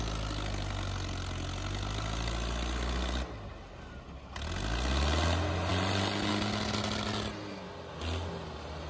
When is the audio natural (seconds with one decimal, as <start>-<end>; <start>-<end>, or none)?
0.0-8.9